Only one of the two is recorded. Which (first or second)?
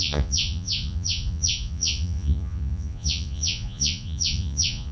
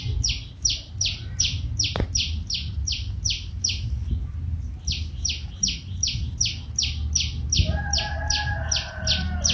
second